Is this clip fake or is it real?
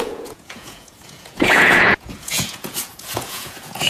fake